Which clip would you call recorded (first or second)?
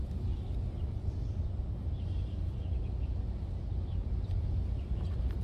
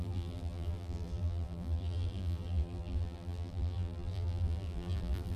first